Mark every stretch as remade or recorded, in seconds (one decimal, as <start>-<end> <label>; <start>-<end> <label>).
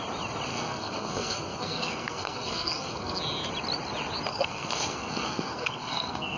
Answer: 0.0-0.5 recorded; 0.5-3.2 remade; 3.2-4.3 recorded; 4.3-6.4 remade